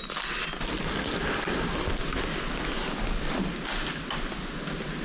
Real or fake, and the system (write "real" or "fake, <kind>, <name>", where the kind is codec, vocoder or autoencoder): real